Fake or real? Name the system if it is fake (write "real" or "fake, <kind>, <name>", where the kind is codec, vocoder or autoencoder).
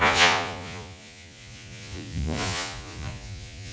fake, vocoder, Vocos